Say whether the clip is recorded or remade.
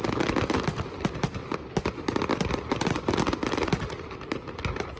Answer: recorded